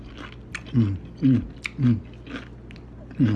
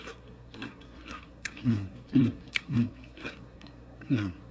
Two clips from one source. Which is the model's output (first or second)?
second